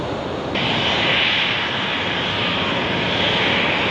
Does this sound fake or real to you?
real